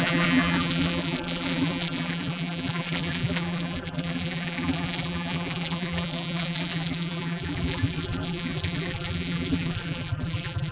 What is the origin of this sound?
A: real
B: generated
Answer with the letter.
B